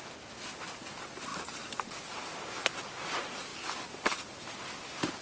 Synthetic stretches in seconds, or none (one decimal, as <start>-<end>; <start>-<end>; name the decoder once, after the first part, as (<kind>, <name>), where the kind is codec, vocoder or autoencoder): none